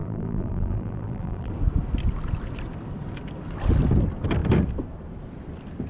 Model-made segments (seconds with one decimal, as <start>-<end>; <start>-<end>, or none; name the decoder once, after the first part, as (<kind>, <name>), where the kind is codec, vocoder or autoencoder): 0.0-1.5 (vocoder, BigVGAN v2)